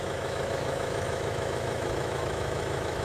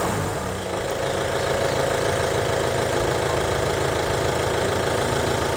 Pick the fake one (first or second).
first